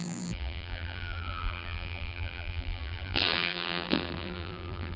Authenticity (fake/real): fake